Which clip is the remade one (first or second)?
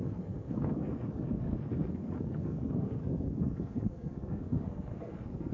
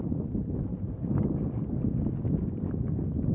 first